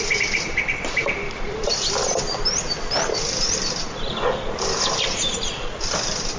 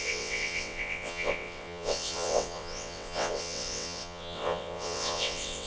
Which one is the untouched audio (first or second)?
first